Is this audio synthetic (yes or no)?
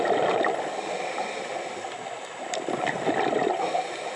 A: no